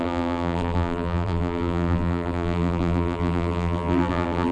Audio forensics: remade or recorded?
remade